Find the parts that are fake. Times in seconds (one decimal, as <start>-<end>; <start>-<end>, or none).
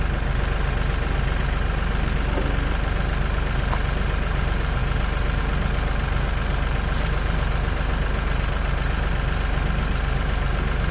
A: none